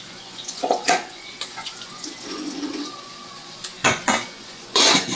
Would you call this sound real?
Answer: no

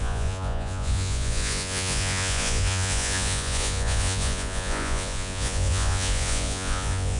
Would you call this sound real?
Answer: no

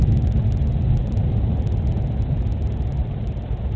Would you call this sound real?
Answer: yes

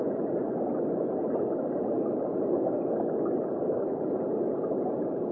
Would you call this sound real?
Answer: yes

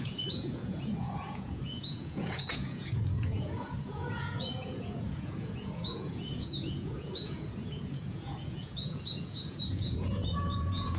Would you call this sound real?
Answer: no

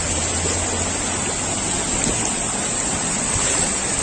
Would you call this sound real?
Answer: yes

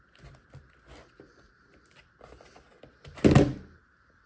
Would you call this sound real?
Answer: yes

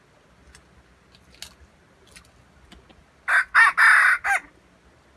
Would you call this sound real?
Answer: yes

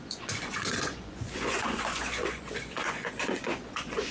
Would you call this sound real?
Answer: no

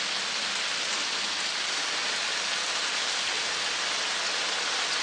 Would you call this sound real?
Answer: yes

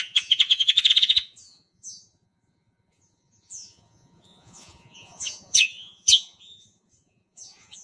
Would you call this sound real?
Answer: no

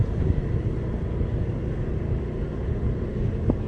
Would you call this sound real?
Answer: yes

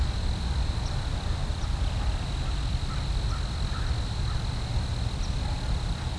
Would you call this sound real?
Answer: yes